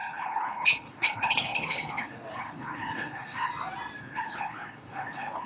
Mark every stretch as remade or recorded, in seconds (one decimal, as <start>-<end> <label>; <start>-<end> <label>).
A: 0.0-3.5 remade; 3.5-4.0 recorded; 4.0-5.5 remade